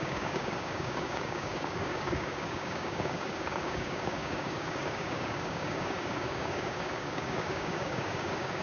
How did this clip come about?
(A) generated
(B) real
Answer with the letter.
A